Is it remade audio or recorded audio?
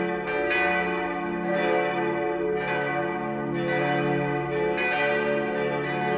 recorded